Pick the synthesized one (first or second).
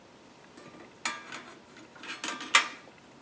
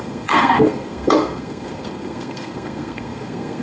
second